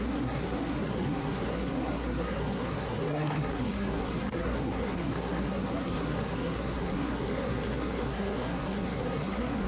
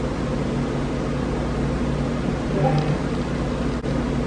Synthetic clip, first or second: first